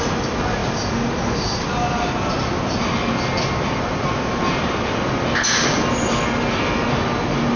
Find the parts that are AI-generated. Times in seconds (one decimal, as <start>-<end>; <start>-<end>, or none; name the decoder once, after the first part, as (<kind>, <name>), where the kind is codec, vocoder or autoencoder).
none